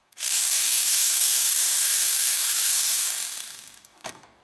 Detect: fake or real fake